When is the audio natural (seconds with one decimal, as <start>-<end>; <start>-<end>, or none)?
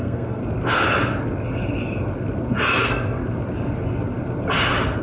0.4-2.8; 3.2-5.0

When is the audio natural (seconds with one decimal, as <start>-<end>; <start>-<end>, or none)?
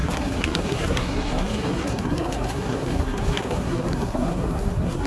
none